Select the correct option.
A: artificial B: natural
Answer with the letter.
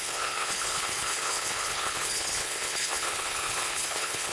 A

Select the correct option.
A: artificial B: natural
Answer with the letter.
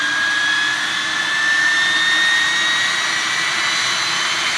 B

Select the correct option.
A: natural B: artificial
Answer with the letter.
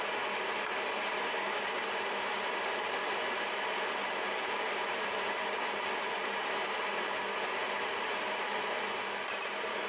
A